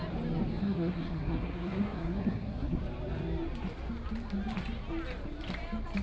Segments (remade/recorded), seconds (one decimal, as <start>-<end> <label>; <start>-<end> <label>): 0.0-0.6 recorded; 0.6-2.8 remade; 2.8-6.0 recorded